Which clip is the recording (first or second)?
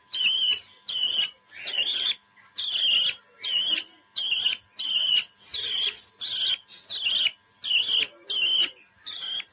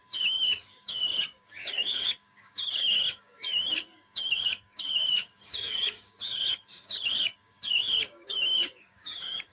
first